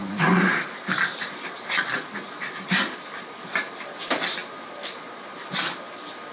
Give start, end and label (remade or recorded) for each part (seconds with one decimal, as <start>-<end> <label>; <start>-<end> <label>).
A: 0.0-6.3 remade